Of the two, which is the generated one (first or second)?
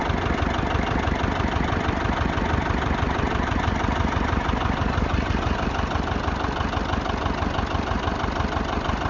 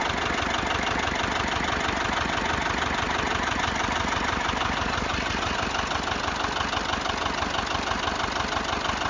first